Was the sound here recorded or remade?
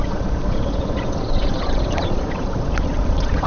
remade